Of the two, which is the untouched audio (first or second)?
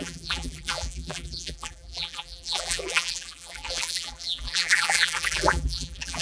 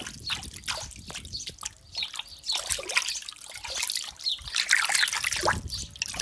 second